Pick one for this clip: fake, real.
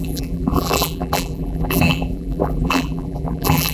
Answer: fake